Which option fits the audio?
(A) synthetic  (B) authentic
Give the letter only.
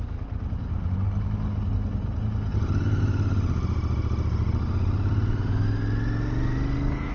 B